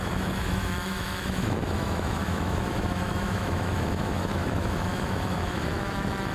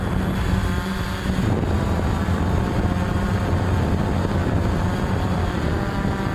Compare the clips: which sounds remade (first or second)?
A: first